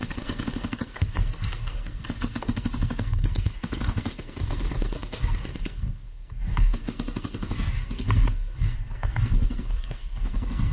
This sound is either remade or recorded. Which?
remade